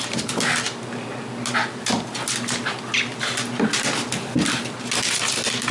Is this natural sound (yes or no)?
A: yes